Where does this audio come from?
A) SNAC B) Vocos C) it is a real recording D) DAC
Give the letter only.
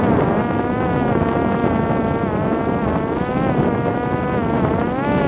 C